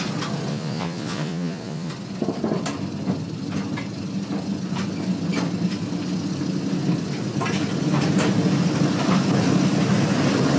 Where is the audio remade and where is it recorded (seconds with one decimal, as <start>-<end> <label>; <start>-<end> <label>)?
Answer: 0.0-0.5 recorded; 0.5-1.9 remade; 1.9-10.6 recorded